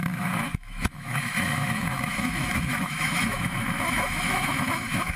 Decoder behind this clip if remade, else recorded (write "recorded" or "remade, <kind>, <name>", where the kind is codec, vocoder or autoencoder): remade, autoencoder, DAC-VAE